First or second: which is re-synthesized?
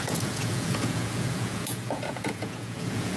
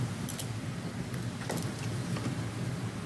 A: first